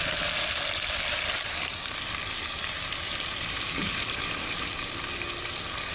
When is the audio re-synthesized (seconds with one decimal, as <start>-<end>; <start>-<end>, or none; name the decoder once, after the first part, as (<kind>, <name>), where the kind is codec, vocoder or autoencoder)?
1.7-2.2 (vocoder, BigVGAN v2)